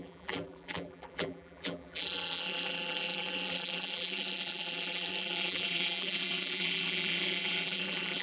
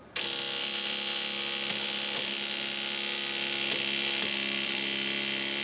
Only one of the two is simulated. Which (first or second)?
first